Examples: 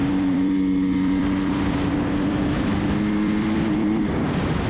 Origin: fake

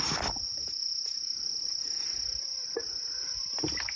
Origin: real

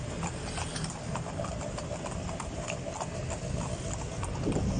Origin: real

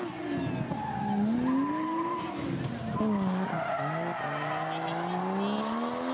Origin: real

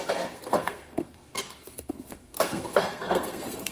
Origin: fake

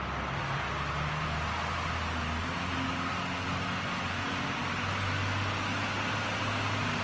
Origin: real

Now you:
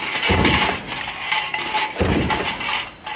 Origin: real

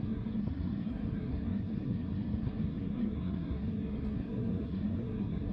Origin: fake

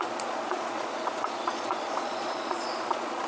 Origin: fake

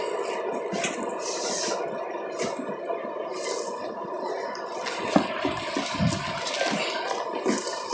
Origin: real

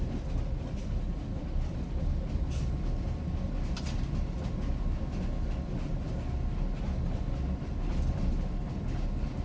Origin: real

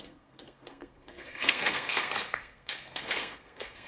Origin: fake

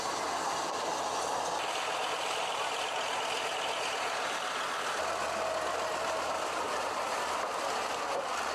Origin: real